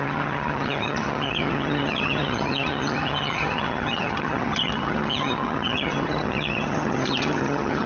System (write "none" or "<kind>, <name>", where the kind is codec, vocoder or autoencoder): vocoder, HiFi-GAN